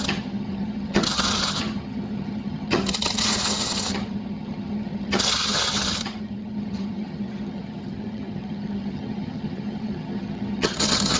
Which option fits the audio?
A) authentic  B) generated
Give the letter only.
B